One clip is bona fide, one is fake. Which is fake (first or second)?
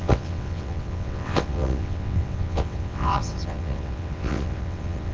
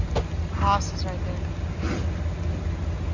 first